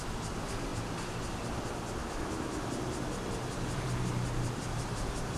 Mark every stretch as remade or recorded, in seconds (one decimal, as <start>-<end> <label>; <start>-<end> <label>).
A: 0.0-2.0 recorded; 2.0-2.6 remade; 2.6-5.4 recorded